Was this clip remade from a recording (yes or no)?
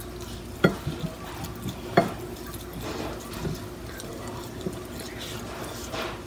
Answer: no